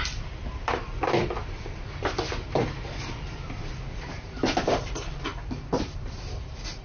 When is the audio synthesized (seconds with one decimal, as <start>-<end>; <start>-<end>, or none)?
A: 0.0-1.4; 2.3-6.8